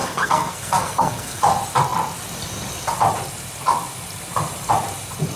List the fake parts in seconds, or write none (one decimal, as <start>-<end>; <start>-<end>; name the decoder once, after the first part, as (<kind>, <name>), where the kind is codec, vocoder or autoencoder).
0.0-1.4 (codec, SNAC)